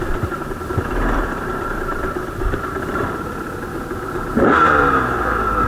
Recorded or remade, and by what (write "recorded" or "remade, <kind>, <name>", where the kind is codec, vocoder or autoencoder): remade, vocoder, BigVGAN v2